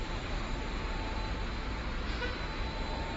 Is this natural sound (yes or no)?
yes